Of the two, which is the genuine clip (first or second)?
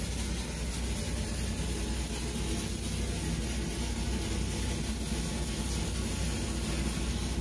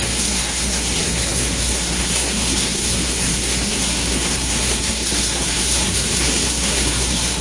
first